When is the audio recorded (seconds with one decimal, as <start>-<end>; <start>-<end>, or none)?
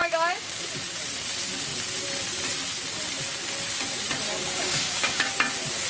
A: 0.6-4.4; 5.3-5.9